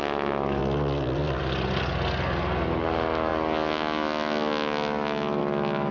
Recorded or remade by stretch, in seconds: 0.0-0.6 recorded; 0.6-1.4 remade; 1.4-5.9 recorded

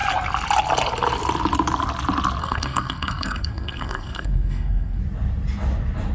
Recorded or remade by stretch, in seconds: 0.0-2.4 recorded; 2.4-5.0 remade; 5.0-6.1 recorded

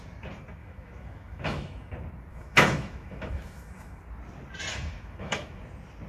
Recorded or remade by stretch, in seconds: 0.0-0.6 recorded; 0.6-1.9 remade; 1.9-2.3 recorded; 2.3-4.0 remade; 4.0-4.7 recorded; 4.7-5.6 remade; 5.6-6.1 recorded

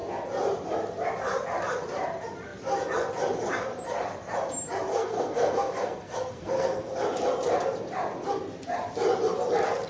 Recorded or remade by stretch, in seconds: 0.0-4.9 recorded; 4.9-6.9 remade; 6.9-9.9 recorded

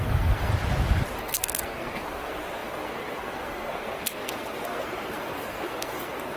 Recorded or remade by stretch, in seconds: 0.0-0.5 remade; 0.5-1.2 recorded; 1.2-6.4 remade

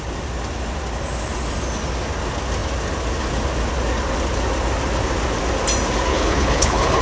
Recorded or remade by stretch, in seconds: 0.0-6.1 recorded; 6.1-7.0 remade